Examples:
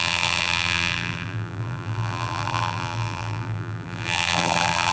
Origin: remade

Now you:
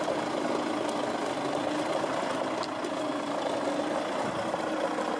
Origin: recorded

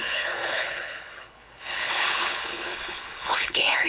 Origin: remade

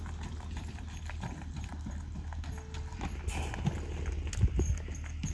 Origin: recorded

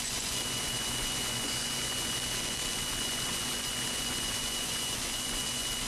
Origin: remade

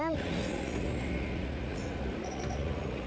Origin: remade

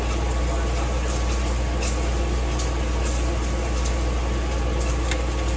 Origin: recorded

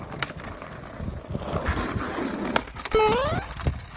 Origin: recorded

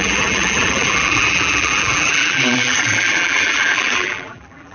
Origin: remade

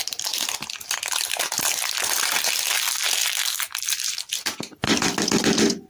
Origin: recorded